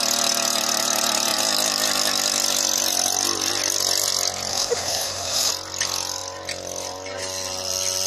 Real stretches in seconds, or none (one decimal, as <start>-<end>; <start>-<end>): 0.0-4.5; 5.5-8.1